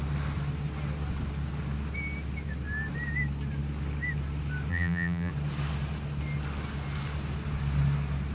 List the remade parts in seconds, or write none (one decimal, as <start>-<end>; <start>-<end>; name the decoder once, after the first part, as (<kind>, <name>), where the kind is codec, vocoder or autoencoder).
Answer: 4.7-5.3 (vocoder, BigVGAN v2)